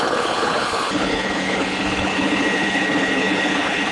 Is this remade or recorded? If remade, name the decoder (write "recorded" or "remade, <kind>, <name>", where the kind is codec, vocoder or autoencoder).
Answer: remade, codec, HILCodec